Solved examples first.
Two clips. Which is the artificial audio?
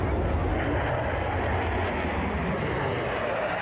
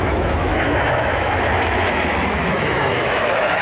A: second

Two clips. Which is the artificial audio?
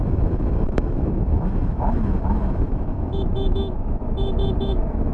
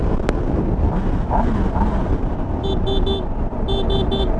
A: first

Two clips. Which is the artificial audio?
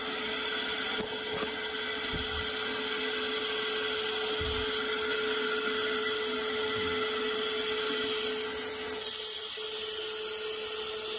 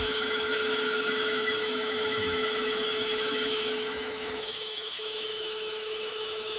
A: second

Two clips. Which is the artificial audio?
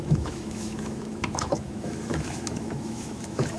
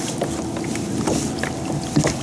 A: first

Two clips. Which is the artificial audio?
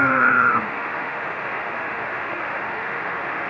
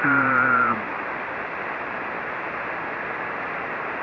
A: first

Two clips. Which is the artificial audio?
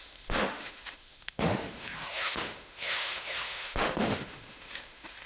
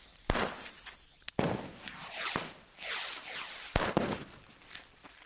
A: first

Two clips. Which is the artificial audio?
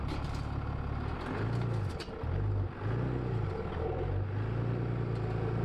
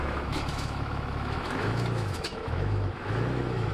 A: second